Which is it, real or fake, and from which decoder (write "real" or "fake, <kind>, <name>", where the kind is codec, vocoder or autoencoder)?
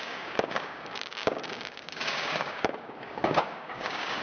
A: fake, codec, DAC